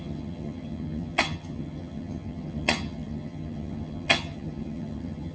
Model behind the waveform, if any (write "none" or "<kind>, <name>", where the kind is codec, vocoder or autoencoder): vocoder, HiFi-GAN